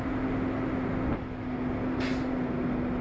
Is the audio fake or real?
real